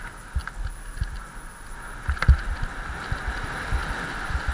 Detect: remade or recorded recorded